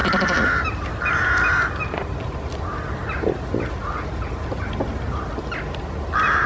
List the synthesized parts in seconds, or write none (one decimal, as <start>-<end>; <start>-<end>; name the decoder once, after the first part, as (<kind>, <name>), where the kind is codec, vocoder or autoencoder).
none